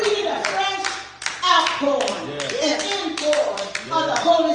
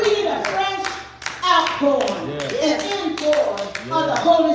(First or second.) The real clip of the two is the second